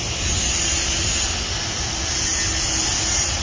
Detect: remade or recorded recorded